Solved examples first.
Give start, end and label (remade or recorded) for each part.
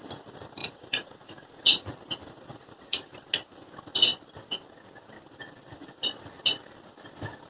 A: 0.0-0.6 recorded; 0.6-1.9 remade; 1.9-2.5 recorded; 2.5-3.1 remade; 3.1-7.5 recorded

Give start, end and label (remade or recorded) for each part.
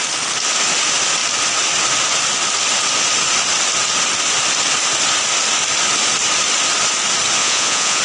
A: 0.0-7.4 recorded; 7.4-8.0 remade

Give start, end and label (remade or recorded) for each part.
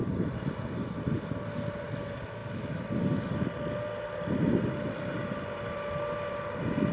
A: 0.0-6.9 recorded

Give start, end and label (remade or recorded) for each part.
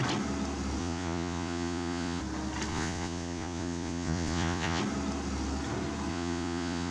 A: 0.0-0.8 recorded; 0.8-2.2 remade; 2.2-2.7 recorded; 2.7-4.8 remade; 4.8-6.1 recorded; 6.1-6.9 remade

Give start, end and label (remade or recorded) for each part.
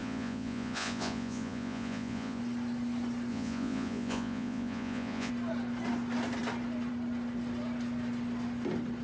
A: 0.0-2.4 remade; 2.4-3.3 recorded; 3.3-5.3 remade; 5.3-9.0 recorded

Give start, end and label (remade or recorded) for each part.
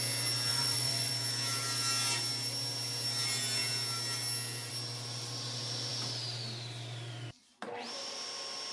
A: 0.0-0.5 recorded; 0.5-1.1 remade; 1.1-8.7 recorded